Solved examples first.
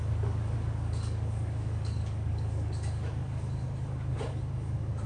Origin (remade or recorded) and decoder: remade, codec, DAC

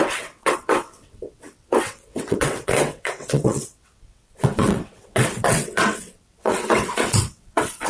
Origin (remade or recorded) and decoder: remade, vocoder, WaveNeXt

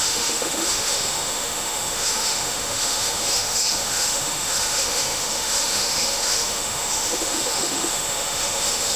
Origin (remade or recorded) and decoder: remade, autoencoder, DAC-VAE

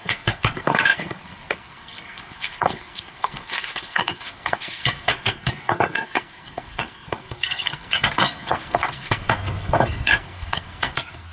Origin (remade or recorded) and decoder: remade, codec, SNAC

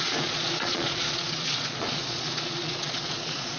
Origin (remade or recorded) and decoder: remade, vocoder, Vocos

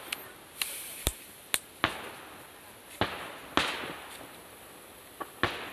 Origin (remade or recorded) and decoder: recorded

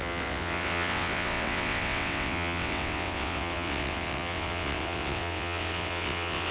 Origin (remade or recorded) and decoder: remade, vocoder, WaveNeXt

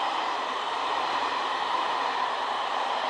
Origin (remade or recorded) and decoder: remade, vocoder, BigVGAN v2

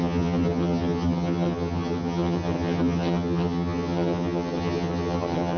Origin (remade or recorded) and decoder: remade, vocoder, HiFi-GAN